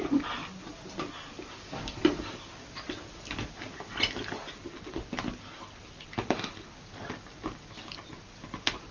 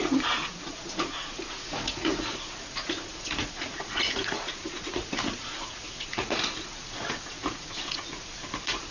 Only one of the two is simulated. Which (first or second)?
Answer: second